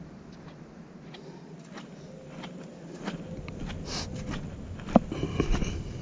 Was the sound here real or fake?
real